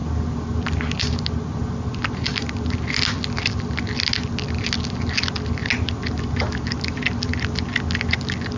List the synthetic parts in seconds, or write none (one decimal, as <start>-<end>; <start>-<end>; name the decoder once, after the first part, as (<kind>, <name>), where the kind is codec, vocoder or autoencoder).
none